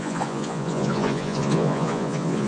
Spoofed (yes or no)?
yes